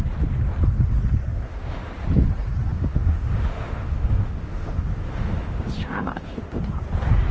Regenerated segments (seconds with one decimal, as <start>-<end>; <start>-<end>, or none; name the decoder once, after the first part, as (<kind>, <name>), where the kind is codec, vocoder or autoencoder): 1.3-1.9 (autoencoder, DAC-VAE); 2.7-6.6